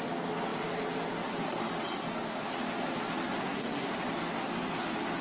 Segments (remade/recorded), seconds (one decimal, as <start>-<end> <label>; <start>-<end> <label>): 0.0-3.4 recorded; 3.4-3.9 remade; 3.9-5.2 recorded